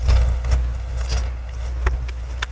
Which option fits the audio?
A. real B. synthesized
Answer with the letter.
A